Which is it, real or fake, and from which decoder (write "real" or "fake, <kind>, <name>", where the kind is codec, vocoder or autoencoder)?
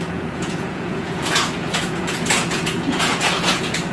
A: fake, vocoder, Vocos